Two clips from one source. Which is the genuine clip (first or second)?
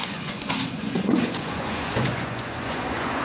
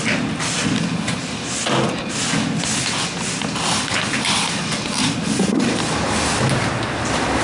second